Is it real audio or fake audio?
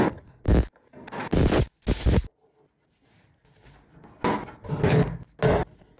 real